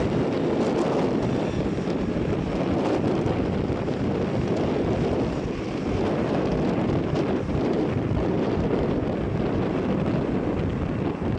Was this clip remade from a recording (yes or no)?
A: no